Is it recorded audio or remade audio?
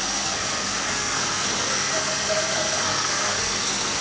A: remade